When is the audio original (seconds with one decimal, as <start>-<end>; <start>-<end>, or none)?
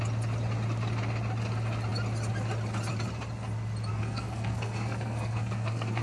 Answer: 0.0-3.9